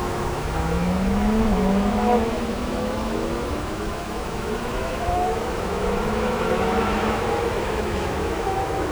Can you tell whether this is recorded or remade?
remade